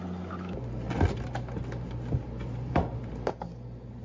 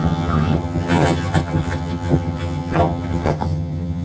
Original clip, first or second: first